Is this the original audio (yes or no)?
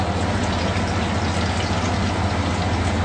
yes